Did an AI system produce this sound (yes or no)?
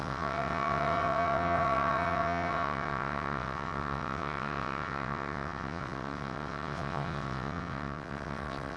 yes